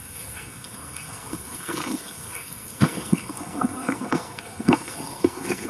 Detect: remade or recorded remade